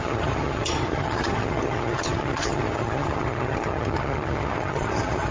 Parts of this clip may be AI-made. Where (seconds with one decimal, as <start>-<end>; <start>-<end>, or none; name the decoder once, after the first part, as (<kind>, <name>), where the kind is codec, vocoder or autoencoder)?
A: 0.0-5.3 (vocoder, HiFi-GAN)